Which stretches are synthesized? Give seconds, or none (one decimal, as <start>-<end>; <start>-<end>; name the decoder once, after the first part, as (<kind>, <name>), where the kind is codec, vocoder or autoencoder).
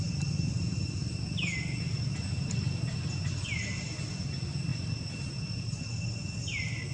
none